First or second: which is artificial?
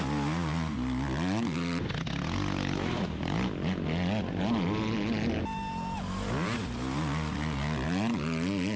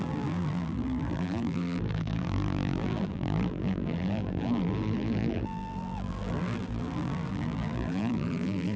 second